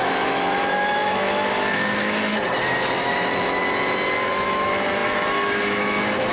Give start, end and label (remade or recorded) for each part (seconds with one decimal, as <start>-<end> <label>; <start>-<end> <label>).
0.0-2.3 remade; 2.3-3.0 recorded; 3.0-3.6 remade; 3.6-4.3 recorded; 4.3-6.3 remade